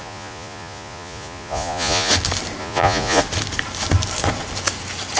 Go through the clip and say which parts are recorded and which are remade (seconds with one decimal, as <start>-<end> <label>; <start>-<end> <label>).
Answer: 0.0-2.1 remade; 2.1-2.6 recorded; 2.6-3.2 remade; 3.2-5.2 recorded